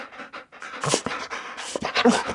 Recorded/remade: recorded